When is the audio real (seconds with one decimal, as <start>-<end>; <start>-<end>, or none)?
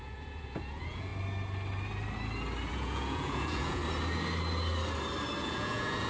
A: 1.1-2.7; 3.8-5.4